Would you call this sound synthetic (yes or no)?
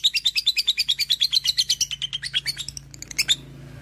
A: no